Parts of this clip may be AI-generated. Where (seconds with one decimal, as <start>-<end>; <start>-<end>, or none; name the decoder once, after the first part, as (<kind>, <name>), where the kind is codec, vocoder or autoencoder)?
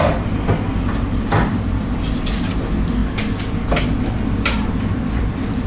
0.0-3.0 (vocoder, BigVGAN v2); 4.2-5.7